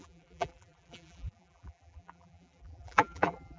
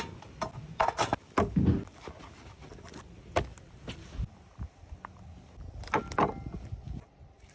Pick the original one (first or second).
second